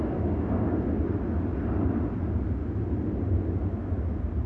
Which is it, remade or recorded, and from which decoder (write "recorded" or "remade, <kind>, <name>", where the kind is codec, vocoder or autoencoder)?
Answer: recorded